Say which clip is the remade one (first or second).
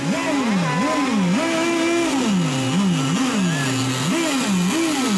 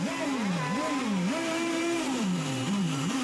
second